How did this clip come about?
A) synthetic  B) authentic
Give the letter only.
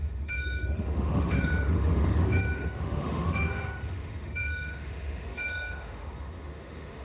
A